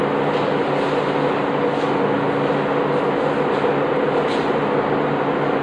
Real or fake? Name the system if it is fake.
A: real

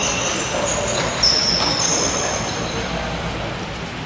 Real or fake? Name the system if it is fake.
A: fake, vocoder, BigVGAN v2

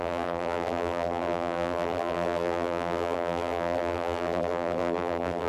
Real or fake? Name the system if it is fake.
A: fake, vocoder, BigVGAN v2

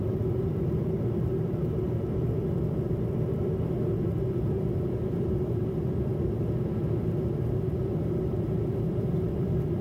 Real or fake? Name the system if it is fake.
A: fake, vocoder, BigVGAN v2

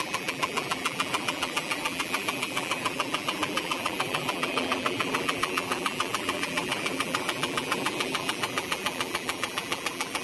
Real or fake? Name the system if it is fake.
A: fake, vocoder, BigVGAN v2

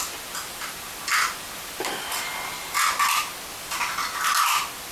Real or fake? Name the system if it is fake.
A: real